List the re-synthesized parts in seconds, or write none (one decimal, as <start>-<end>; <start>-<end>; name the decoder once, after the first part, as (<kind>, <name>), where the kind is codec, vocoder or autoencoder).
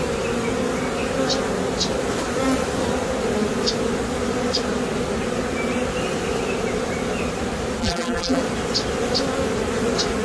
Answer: 7.8-8.4 (vocoder, BigVGAN v2)